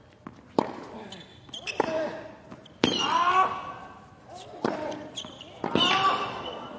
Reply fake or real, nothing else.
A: real